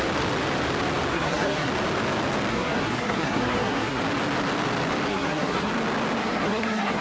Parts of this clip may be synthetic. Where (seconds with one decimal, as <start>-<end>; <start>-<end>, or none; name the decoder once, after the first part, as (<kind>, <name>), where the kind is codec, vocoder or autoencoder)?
1.1-1.7 (codec, SNAC); 2.5-4.0; 5.1-5.7; 6.2-7.0